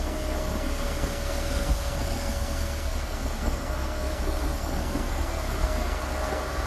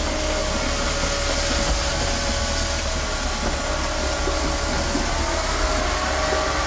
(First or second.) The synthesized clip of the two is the first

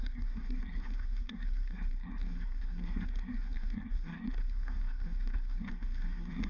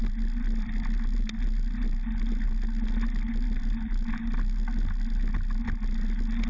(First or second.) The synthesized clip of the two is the first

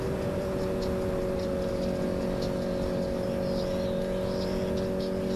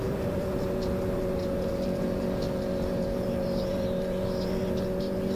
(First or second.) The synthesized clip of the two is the second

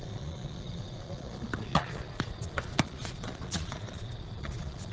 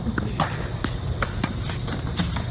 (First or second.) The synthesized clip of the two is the first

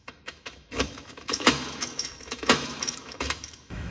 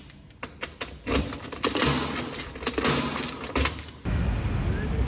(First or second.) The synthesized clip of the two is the first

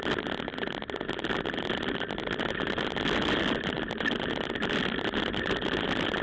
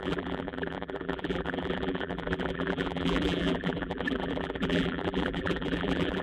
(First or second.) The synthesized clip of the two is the second